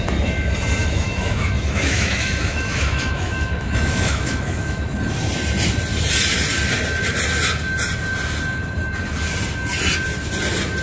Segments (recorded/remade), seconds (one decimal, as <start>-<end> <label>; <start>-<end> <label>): 0.0-0.8 recorded; 0.8-5.3 remade; 5.3-10.8 recorded